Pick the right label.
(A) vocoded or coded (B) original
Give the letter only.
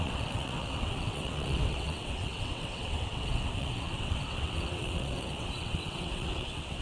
A